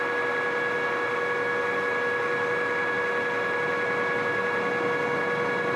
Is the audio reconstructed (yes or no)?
no